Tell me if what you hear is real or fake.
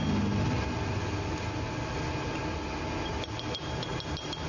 real